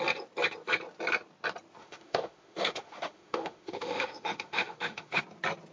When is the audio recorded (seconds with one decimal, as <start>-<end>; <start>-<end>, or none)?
0.0-1.8; 5.2-5.7